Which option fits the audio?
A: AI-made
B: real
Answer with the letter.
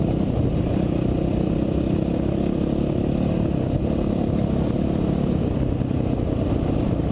B